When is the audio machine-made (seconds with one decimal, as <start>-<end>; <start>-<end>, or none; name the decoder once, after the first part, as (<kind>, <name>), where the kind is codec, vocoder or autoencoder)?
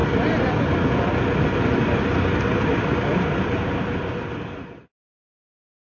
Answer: none